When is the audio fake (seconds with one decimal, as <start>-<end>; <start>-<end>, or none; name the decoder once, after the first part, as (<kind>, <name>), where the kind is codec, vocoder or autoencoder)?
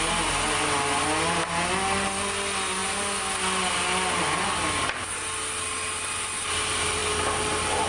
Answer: none